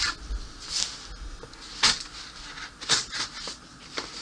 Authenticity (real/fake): real